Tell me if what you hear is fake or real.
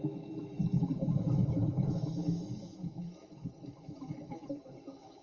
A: fake